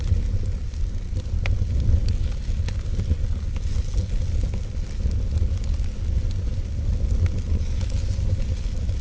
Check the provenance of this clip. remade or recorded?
recorded